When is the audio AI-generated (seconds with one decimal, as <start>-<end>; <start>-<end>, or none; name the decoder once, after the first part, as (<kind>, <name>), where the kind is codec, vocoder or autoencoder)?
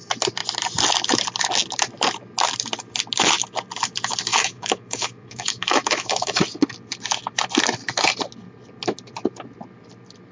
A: 4.3-6.4 (autoencoder, DAC-VAE)